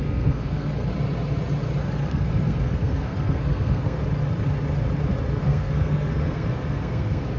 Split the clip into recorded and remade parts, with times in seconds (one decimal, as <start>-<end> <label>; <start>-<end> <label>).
0.0-0.9 remade; 0.9-2.1 recorded; 2.1-4.0 remade; 4.0-5.4 recorded; 5.4-7.4 remade